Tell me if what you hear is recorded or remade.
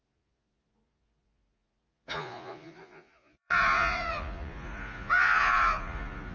remade